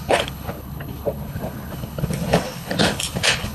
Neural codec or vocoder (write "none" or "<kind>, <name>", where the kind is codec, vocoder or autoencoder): codec, HILCodec